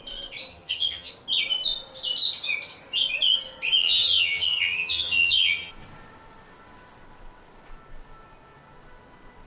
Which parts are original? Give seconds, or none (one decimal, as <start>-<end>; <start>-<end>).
0.0-0.5; 1.1-3.8; 5.7-9.5